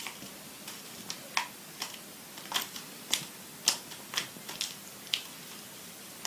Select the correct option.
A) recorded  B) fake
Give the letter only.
A